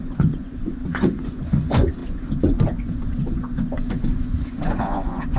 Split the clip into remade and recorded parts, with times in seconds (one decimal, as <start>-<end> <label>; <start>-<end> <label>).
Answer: 0.0-5.4 remade